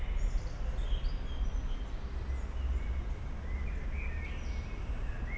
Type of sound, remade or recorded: recorded